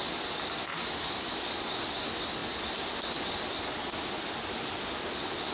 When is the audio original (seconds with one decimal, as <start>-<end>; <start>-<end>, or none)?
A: 0.0-0.7; 1.5-5.5